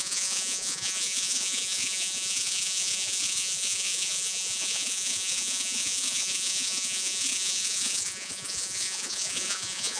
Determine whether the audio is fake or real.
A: fake